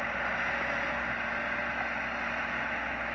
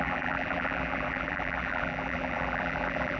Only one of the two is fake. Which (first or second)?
second